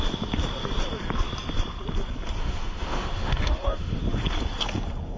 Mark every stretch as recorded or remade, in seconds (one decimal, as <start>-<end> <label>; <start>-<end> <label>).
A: 0.0-2.4 recorded; 2.4-4.0 remade; 4.0-5.2 recorded